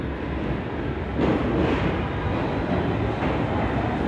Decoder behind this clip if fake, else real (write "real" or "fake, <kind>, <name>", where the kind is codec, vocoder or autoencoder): real